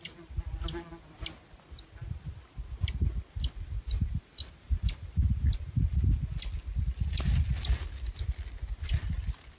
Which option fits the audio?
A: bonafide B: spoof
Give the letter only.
A